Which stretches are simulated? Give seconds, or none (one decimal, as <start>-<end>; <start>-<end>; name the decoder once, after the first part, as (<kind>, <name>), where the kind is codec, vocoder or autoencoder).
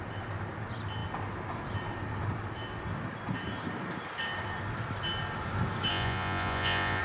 5.9-7.0 (vocoder, Vocos)